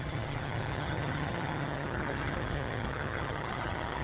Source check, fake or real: fake